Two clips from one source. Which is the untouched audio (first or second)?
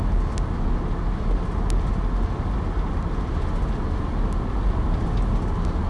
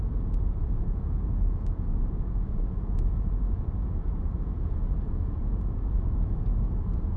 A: first